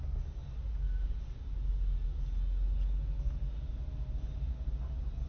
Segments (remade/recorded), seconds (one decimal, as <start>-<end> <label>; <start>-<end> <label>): 0.0-5.3 recorded